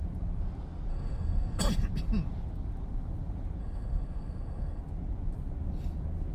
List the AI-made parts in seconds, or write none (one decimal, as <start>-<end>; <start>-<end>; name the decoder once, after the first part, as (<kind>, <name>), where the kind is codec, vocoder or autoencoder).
0.9-1.6 (autoencoder, DAC-VAE); 3.6-4.8